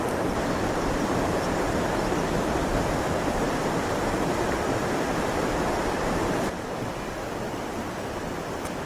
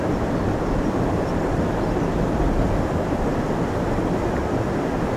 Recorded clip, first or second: second